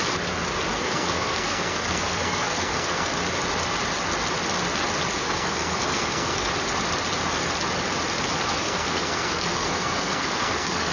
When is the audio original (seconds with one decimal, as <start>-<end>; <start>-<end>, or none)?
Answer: 0.0-0.7; 3.1-5.2; 6.5-8.5

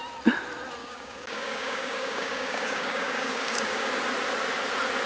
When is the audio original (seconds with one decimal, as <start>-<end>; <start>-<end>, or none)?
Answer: 0.0-0.8; 3.9-5.1

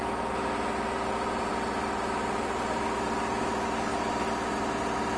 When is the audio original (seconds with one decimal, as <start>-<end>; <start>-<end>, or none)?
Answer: 0.0-5.2

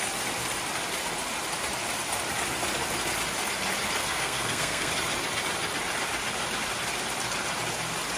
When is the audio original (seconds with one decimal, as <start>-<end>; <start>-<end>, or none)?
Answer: 0.0-4.0; 4.9-8.2

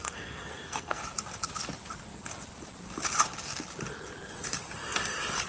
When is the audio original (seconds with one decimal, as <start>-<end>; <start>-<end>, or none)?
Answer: 1.0-5.5

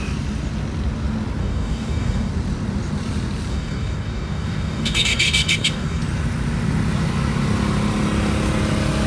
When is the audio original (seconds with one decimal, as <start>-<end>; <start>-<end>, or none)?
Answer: 0.0-1.4; 2.3-3.5; 6.0-9.1

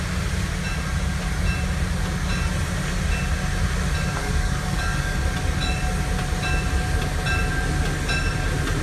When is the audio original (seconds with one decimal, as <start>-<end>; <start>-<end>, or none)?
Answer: 0.0-4.2; 5.2-8.8

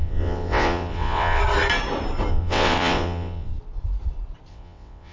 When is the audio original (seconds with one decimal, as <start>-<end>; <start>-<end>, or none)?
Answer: 1.4-2.3; 3.5-4.5